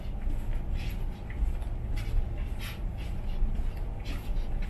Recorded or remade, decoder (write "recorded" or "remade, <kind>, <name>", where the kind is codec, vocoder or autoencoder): recorded